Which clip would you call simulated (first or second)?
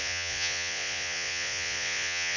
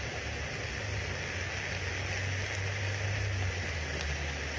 first